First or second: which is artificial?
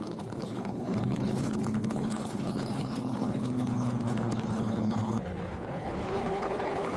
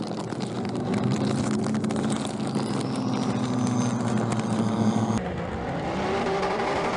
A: first